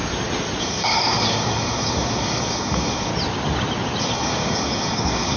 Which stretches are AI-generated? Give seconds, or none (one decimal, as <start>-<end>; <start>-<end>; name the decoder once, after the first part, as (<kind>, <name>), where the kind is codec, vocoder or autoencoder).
0.6-3.1 (codec, DAC); 4.0-5.4